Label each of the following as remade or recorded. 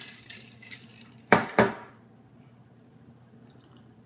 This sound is remade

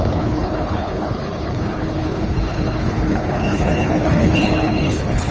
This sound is remade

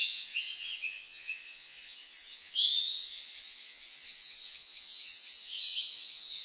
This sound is remade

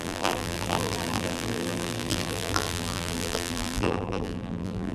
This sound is remade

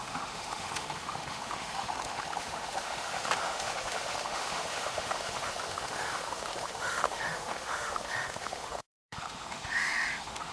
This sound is remade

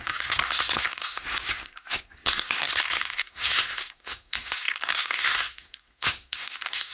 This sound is remade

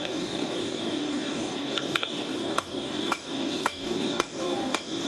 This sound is remade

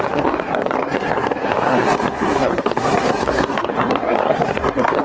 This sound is remade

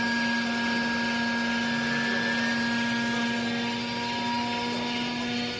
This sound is recorded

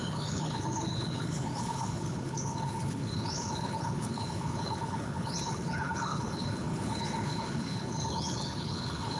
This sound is remade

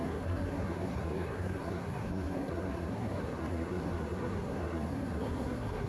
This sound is remade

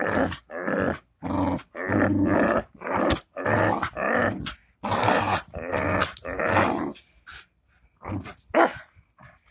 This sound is recorded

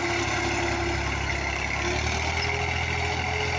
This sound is recorded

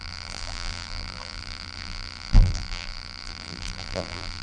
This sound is remade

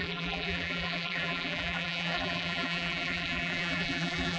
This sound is remade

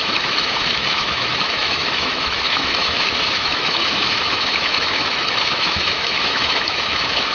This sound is remade